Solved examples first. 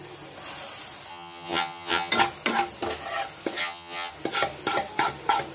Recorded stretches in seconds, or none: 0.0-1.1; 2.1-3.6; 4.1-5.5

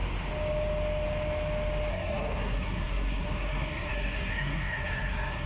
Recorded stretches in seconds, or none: 0.0-1.9

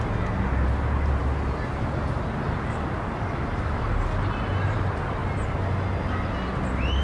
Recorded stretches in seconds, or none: 0.0-7.0

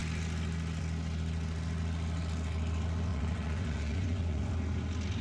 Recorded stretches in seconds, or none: 0.0-3.1; 4.5-5.2

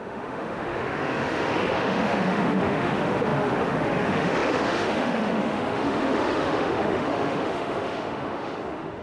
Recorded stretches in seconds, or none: none

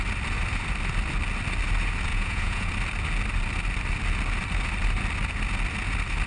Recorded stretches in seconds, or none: 0.0-2.1; 2.7-6.3

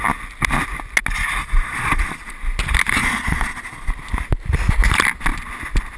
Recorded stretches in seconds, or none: 0.0-1.4; 2.3-3.0; 3.9-6.0